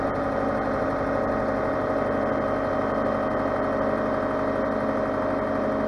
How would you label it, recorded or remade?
recorded